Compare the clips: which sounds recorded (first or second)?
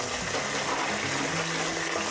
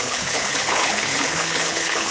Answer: first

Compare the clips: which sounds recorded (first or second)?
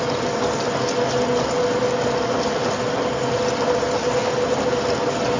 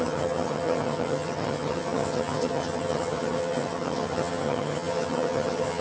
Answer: first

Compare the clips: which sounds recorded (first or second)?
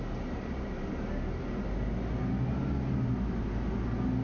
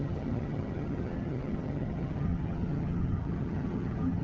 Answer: first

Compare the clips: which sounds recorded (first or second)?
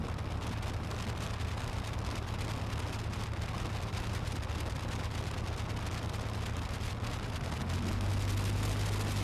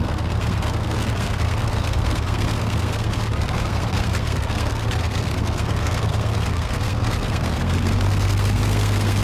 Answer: first